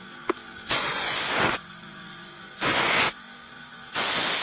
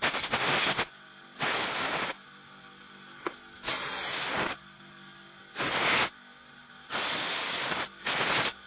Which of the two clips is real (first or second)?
second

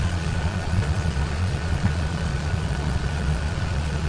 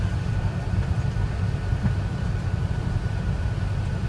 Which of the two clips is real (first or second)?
second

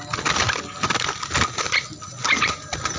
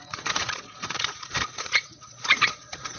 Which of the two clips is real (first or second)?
first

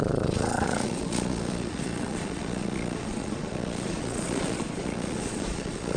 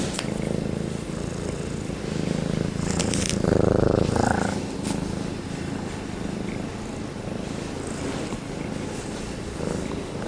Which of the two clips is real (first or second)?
second